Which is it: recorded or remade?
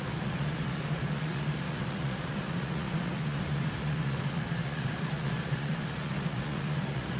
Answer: remade